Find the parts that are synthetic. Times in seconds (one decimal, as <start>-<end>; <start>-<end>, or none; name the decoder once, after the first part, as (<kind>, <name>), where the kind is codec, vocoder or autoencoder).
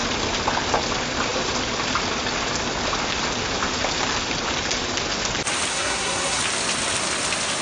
5.7-6.4 (codec, SNAC)